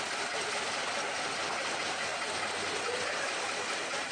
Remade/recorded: recorded